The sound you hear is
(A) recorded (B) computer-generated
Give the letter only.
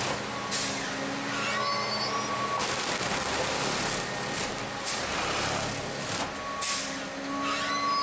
A